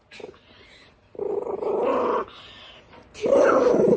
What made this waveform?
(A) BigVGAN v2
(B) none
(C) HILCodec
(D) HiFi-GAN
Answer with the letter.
B